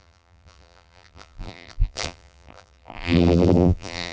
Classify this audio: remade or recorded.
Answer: remade